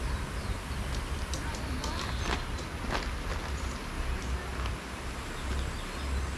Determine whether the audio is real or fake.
real